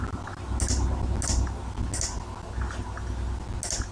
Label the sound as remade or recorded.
recorded